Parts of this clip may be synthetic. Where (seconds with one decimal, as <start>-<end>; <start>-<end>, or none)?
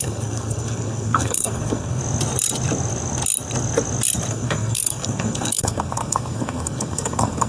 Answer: 0.0-2.0; 4.3-7.5